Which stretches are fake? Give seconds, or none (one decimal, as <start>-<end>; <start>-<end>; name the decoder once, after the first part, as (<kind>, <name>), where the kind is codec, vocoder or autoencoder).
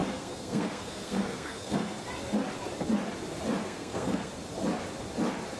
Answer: 0.0-2.0 (codec, SNAC); 3.6-4.3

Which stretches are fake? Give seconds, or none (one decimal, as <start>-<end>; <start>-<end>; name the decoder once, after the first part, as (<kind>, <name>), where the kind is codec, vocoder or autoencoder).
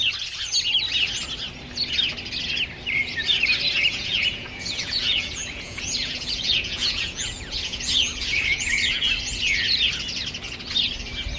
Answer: 3.9-9.1 (vocoder, Vocos)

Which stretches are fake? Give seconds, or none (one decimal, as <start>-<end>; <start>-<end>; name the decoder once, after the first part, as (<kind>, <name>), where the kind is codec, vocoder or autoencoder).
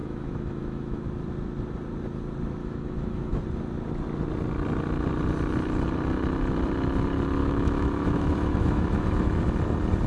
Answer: 0.0-1.1 (autoencoder, DAC-VAE); 2.6-3.4; 7.4-9.4